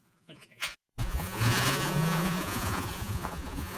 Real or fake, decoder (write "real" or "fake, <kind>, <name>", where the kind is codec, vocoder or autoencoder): fake, vocoder, Vocos